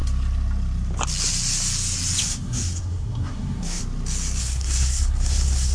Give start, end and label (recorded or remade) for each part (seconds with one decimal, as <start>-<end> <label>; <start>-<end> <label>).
0.0-2.2 recorded; 2.2-3.8 remade; 3.8-4.4 recorded; 4.4-5.7 remade